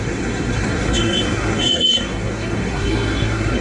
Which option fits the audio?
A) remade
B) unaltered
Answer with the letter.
A